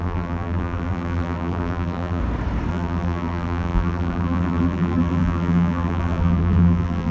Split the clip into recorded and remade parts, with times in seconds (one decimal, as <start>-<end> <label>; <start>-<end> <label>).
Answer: 0.0-2.2 remade; 2.2-2.7 recorded; 2.7-7.1 remade